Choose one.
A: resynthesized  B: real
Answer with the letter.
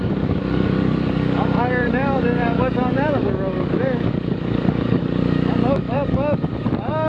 A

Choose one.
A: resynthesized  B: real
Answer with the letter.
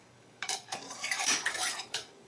A